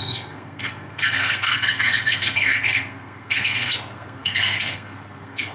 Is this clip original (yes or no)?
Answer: no